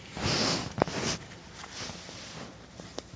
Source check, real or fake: real